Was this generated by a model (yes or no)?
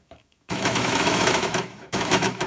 yes